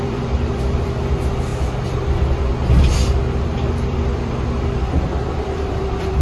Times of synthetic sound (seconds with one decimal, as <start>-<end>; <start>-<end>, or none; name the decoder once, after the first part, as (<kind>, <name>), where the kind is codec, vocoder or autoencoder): 0.0-1.5 (vocoder, BigVGAN v2); 3.7-6.2